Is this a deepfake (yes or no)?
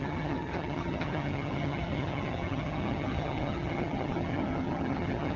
yes